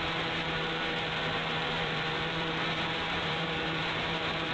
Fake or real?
fake